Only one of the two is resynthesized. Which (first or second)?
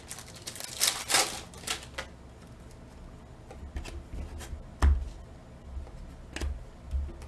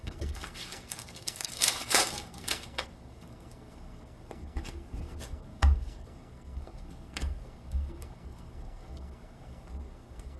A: second